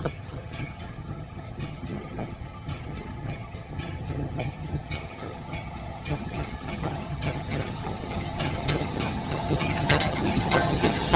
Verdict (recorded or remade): remade